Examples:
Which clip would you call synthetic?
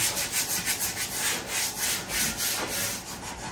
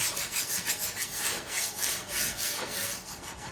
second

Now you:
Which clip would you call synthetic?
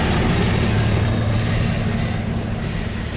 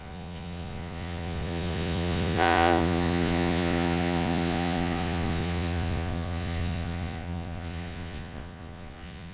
second